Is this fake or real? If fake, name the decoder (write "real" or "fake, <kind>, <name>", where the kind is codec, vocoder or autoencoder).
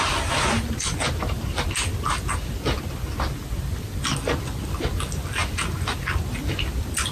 real